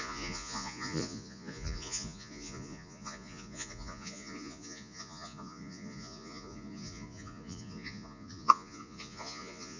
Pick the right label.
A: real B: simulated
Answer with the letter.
B